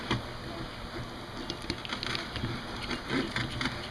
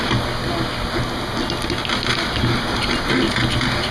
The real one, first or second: second